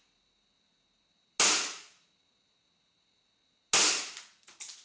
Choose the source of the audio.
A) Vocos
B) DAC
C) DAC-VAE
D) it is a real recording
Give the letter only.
D